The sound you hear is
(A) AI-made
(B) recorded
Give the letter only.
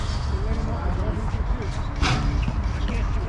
B